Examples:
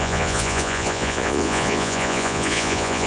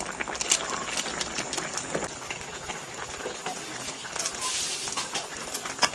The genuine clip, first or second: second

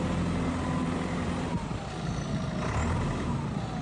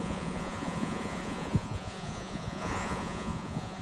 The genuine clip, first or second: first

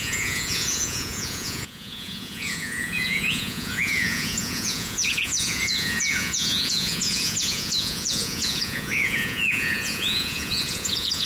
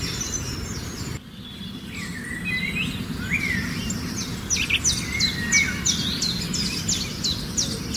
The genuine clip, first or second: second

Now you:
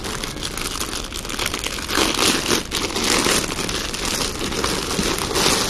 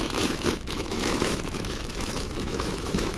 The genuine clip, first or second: first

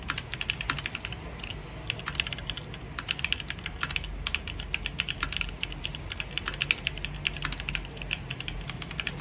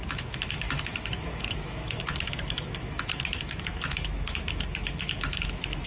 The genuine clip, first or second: first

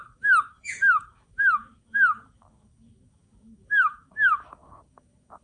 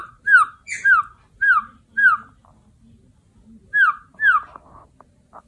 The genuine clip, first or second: second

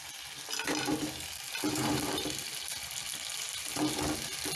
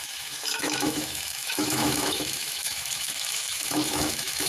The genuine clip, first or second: first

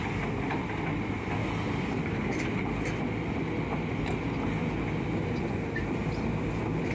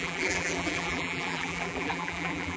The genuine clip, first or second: first